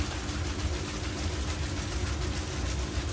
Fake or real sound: real